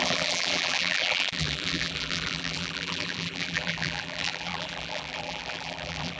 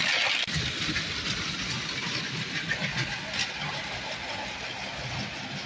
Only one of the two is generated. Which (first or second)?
first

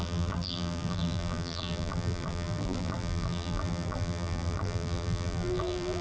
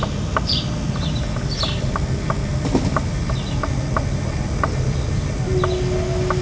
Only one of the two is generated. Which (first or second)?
first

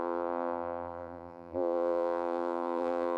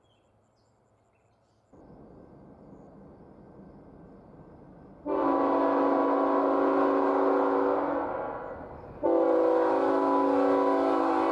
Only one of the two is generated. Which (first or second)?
first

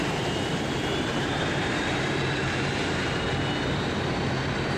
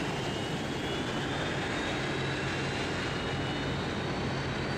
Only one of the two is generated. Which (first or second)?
first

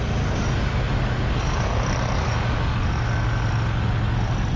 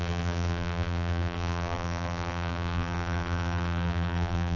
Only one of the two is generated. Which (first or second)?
second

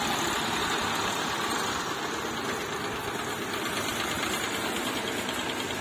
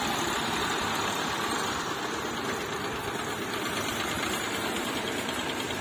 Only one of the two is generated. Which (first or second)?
second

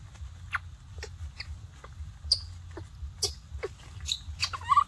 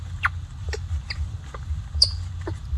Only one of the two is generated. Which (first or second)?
second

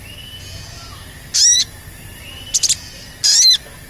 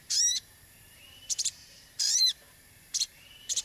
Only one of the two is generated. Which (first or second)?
second